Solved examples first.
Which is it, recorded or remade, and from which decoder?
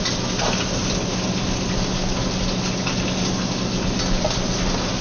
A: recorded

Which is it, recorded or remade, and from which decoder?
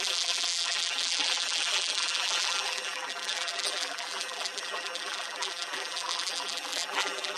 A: remade, vocoder, BigVGAN v2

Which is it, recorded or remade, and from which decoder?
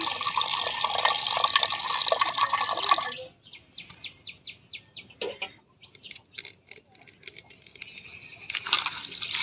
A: recorded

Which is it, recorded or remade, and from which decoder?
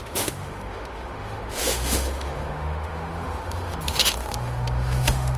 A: remade, autoencoder, DAC-VAE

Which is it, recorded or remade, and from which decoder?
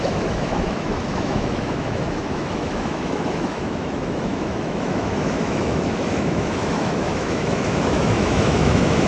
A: remade, autoencoder, DAC-VAE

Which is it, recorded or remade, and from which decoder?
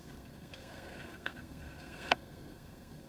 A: remade, codec, SNAC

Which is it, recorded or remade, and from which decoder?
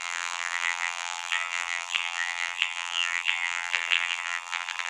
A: remade, vocoder, BigVGAN v2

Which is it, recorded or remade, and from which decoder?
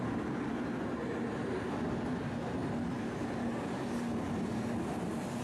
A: recorded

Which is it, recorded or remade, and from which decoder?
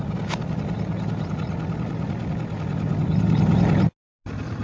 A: recorded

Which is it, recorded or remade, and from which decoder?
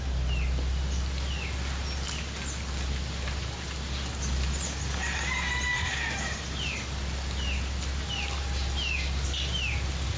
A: recorded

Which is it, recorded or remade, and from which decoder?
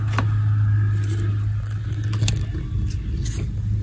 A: recorded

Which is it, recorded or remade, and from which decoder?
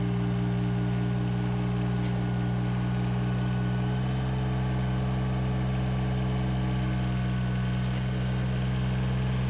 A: recorded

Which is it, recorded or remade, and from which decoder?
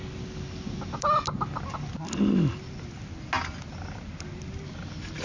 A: recorded